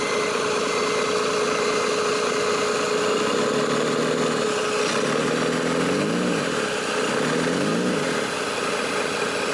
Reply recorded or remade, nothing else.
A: recorded